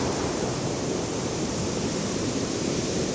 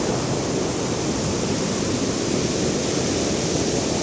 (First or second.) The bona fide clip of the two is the second